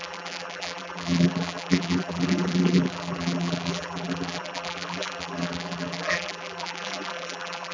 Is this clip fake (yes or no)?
yes